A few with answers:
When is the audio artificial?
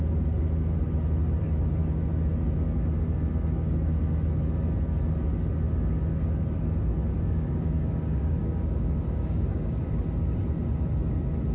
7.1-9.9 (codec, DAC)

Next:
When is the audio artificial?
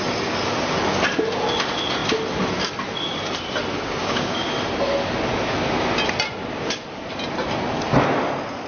4.0-4.5 (codec, DAC)